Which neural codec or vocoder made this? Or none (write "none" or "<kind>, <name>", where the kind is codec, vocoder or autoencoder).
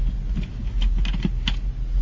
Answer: none